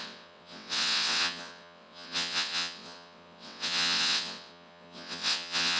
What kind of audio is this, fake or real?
fake